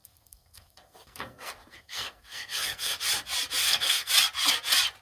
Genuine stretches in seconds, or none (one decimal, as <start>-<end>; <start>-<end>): 3.0-3.6; 4.1-5.0